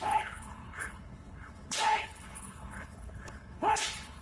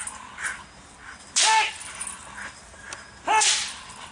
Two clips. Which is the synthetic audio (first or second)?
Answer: first